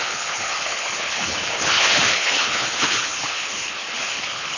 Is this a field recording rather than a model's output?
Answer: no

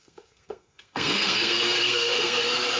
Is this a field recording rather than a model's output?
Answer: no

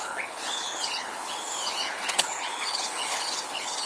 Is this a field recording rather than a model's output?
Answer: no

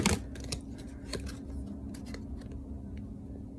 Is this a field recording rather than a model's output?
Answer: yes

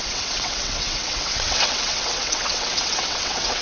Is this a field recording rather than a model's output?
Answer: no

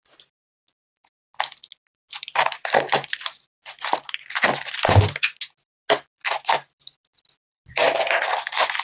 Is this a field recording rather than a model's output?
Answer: yes